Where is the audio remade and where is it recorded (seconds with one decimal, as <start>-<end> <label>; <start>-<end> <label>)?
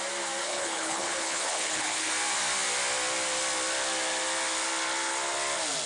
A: 0.0-0.4 recorded; 0.4-2.1 remade; 2.1-5.9 recorded